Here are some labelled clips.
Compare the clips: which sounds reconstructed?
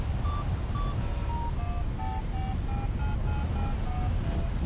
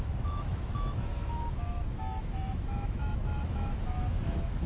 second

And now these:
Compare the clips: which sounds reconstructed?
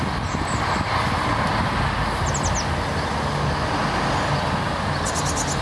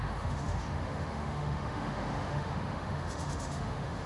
second